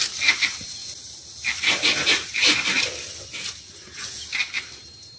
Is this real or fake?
real